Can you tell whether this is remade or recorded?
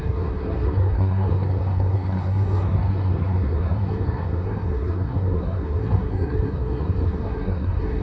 remade